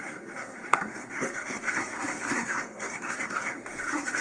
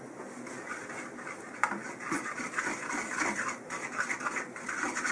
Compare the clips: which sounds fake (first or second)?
first